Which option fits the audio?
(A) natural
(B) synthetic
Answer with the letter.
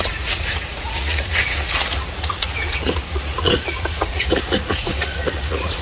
B